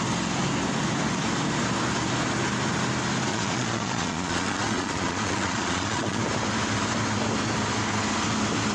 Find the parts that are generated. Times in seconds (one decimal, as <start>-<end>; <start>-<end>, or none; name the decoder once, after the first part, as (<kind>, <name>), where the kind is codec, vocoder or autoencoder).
3.3-6.2 (vocoder, Vocos)